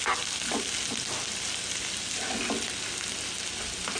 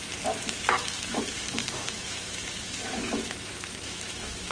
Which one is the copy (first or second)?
second